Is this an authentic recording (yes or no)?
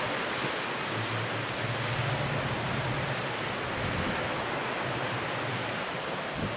yes